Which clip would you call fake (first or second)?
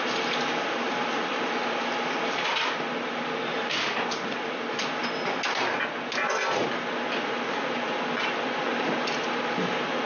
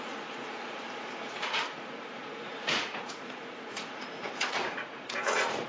second